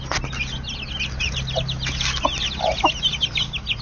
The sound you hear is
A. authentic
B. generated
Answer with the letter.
A